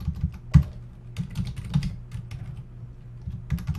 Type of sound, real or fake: real